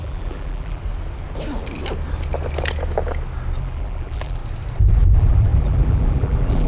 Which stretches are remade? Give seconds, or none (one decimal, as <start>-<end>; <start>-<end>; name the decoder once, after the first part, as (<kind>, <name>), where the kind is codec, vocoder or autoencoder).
0.0-0.8 (vocoder, BigVGAN v2); 3.6-4.4; 5.0-6.7

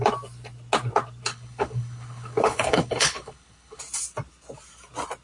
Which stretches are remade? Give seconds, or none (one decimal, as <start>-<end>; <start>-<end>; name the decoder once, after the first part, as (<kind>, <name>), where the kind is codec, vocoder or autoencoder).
1.3-3.8 (codec, HILCodec)

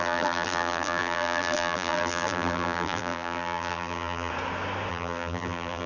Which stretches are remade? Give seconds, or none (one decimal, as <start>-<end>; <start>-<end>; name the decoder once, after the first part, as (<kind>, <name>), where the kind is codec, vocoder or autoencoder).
0.0-4.3 (vocoder, BigVGAN v2); 4.9-5.9

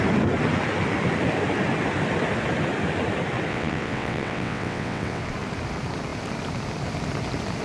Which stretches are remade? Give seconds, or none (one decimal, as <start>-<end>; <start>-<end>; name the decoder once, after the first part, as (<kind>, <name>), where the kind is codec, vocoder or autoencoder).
3.5-5.2 (vocoder, WaveNeXt)

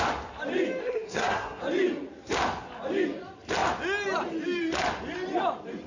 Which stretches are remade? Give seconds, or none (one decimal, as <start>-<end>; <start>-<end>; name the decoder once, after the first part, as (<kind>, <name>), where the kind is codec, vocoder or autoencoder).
0.8-1.6 (codec, SNAC)

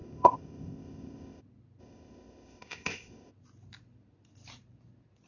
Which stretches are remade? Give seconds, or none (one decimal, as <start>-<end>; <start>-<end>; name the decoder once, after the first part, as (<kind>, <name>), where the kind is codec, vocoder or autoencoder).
0.0-1.4 (codec, ZipCodec); 1.8-3.3

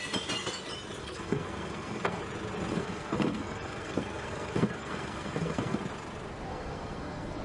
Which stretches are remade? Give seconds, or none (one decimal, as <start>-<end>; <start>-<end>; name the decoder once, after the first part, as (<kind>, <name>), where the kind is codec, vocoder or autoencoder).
1.0-2.2 (codec, SNAC); 2.7-5.8; 6.5-7.4